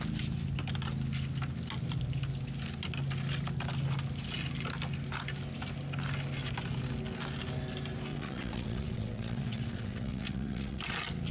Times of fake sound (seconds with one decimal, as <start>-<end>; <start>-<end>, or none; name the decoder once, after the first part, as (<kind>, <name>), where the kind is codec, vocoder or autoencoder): 8.1-10.8 (vocoder, WaveNeXt)